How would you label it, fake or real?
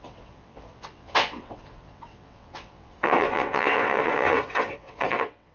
fake